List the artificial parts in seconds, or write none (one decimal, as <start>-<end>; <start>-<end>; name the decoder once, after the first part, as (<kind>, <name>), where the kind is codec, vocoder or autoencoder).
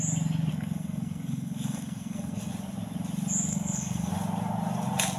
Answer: 0.5-2.5 (codec, SNAC); 3.5-4.1